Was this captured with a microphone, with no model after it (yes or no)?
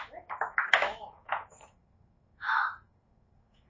no